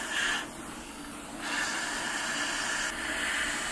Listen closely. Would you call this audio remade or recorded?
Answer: recorded